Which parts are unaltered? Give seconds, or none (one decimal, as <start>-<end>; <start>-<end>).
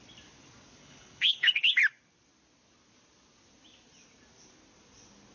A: 0.0-0.8; 1.8-5.3